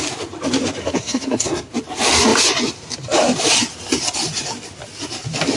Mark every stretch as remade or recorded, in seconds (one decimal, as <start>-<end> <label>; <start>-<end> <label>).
0.0-0.8 recorded; 0.8-1.7 remade; 1.7-5.6 recorded